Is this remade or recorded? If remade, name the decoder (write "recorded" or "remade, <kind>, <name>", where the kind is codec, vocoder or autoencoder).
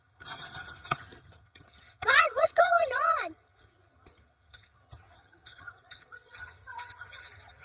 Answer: remade, vocoder, HiFi-GAN